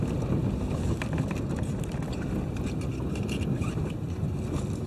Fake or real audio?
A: real